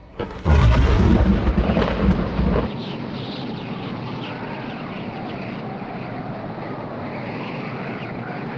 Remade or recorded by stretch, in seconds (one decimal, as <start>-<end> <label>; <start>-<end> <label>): 0.0-1.0 remade; 1.0-8.6 recorded